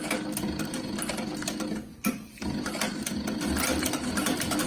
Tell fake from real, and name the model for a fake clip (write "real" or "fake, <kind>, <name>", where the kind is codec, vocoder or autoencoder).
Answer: real